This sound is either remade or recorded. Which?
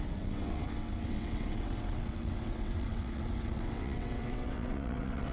remade